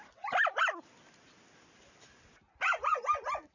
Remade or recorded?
recorded